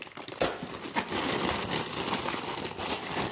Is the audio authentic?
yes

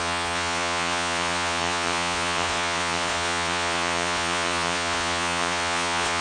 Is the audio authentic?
no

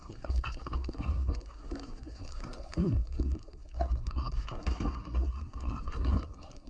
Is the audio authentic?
no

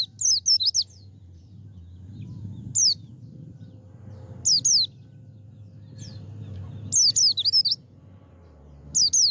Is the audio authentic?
yes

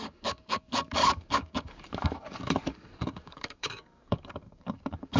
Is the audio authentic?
no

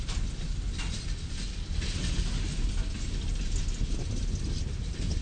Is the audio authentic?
yes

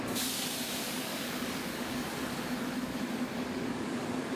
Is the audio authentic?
no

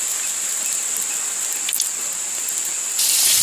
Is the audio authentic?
yes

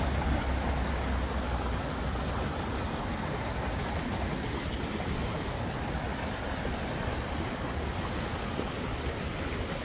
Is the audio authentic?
yes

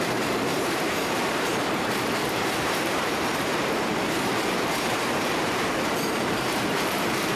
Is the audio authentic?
no